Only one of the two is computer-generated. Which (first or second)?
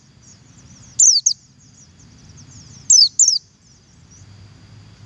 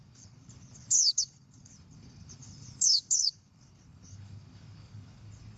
second